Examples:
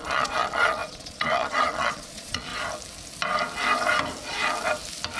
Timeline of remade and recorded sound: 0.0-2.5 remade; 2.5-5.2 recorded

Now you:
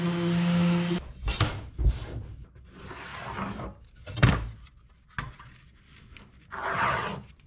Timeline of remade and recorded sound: 0.0-7.5 recorded

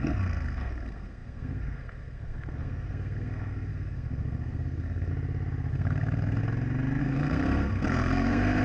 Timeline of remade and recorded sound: 0.0-5.1 remade; 5.1-5.7 recorded; 5.7-6.4 remade; 6.4-7.0 recorded; 7.0-8.6 remade

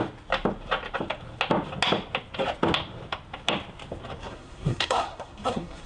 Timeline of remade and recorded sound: 0.0-4.2 recorded; 4.2-5.9 remade

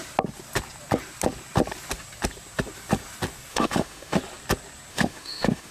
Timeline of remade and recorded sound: 0.0-3.5 recorded; 3.5-4.2 remade; 4.2-4.9 recorded; 4.9-5.7 remade

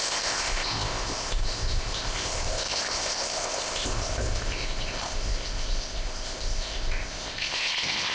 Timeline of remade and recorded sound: 0.0-8.1 remade

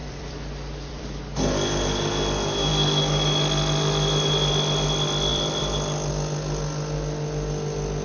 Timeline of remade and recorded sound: 0.0-1.2 remade; 1.2-5.3 recorded; 5.3-6.1 remade; 6.1-8.0 recorded

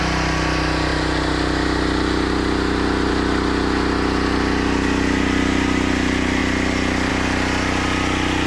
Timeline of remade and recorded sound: 0.0-8.5 recorded